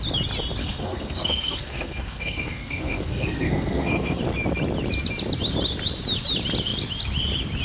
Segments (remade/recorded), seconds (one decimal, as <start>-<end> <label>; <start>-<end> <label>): 0.0-0.6 recorded; 0.6-4.2 remade; 4.2-7.6 recorded